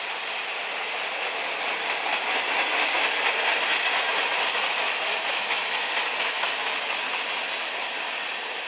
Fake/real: real